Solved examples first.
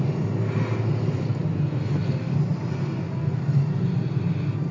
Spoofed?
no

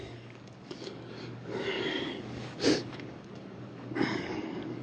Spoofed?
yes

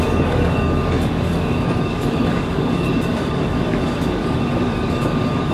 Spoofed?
yes